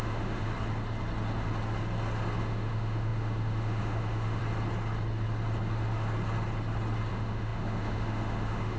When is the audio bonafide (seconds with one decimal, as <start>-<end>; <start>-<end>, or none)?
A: 0.5-2.4; 4.4-7.1